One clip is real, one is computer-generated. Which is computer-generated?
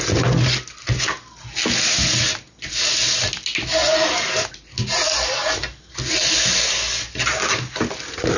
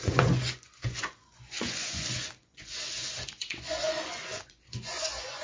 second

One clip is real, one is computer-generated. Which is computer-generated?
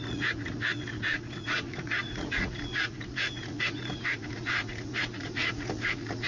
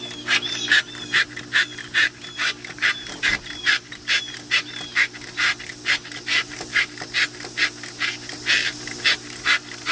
first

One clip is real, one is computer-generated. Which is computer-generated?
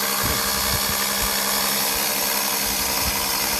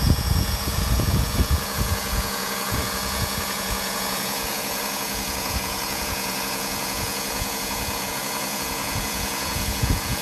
second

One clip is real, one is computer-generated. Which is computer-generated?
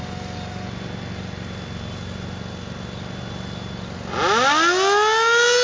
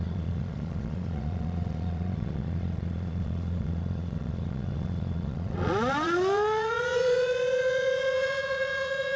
second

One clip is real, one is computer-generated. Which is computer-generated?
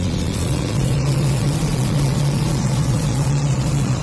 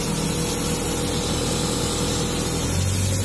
first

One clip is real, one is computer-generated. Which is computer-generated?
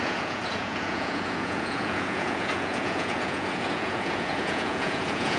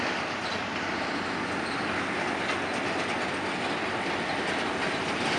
first